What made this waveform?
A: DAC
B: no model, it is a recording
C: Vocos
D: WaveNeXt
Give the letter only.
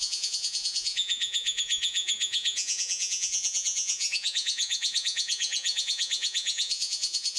C